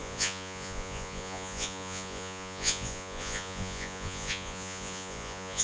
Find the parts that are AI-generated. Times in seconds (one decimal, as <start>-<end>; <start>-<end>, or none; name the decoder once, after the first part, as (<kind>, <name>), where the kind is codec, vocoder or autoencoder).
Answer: 0.0-5.6 (vocoder, Vocos)